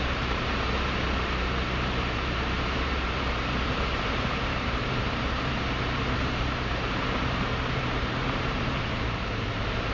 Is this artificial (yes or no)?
yes